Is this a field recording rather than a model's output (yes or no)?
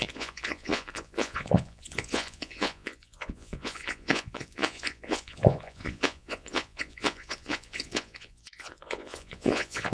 no